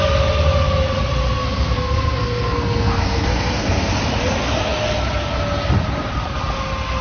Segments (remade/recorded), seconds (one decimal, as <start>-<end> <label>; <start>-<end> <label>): 0.0-1.4 recorded; 1.4-3.9 remade; 3.9-7.0 recorded